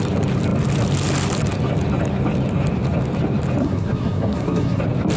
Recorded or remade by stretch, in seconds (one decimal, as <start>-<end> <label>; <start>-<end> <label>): 0.0-3.6 recorded; 3.6-4.8 remade; 4.8-5.2 recorded